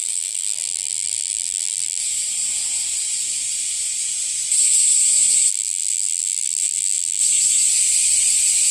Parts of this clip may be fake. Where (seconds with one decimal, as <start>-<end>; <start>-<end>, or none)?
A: 0.0-2.0; 5.5-7.2